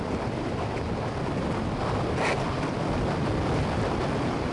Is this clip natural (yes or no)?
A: yes